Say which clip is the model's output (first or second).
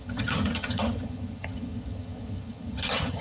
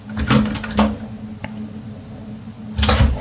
first